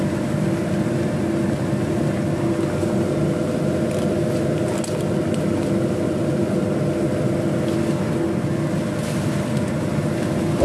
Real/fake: real